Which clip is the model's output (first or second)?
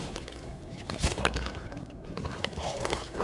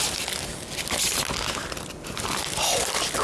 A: first